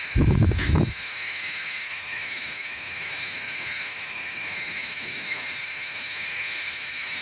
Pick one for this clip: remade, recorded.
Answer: remade